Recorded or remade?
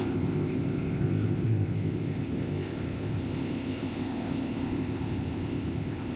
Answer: remade